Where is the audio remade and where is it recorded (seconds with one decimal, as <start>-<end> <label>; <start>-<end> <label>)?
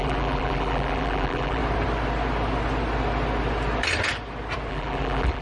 0.0-1.6 remade; 1.6-4.7 recorded; 4.7-5.4 remade